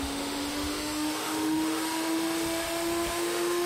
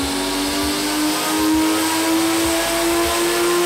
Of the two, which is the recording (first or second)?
second